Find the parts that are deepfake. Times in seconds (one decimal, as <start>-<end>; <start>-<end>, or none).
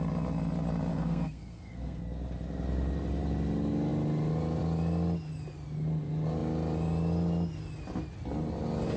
0.9-2.0